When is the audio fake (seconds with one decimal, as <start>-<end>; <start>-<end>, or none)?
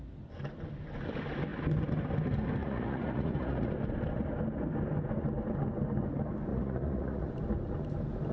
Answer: 2.6-3.7; 6.5-7.3